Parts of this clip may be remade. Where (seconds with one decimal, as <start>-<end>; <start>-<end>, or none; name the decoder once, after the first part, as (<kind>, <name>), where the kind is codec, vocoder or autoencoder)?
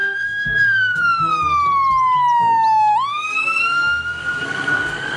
0.0-1.3 (codec, SNAC); 3.1-5.2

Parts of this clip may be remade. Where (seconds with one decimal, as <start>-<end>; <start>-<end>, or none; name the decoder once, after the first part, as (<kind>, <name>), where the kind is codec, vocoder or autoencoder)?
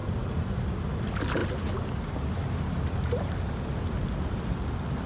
none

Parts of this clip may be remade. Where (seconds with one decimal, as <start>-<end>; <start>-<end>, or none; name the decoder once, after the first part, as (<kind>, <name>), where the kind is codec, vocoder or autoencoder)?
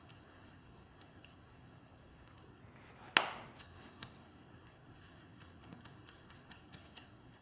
0.0-2.6 (codec, SNAC); 3.6-7.4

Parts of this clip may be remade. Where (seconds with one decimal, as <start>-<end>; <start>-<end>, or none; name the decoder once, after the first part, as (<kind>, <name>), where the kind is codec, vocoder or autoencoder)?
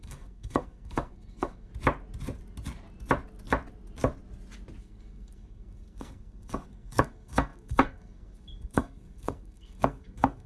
0.0-1.7 (codec, SNAC); 4.8-10.5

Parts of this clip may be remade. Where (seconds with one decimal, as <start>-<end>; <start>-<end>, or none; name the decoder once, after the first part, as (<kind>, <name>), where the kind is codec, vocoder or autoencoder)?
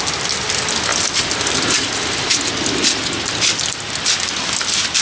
none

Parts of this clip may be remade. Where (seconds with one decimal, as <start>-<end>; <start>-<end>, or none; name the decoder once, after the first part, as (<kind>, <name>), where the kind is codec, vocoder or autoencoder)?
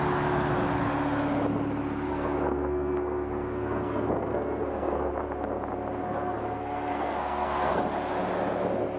2.1-5.1 (codec, SNAC); 6.0-7.8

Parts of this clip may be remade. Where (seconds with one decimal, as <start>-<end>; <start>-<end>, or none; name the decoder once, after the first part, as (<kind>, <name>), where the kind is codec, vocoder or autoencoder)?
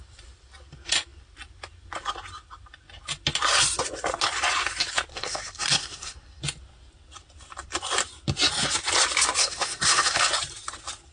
5.1-6.4 (codec, SNAC); 9.4-10.3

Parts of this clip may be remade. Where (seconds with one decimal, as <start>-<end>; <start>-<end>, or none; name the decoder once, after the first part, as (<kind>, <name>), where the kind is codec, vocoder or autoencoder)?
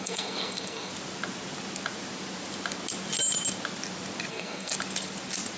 0.0-0.9 (codec, SNAC); 4.3-4.7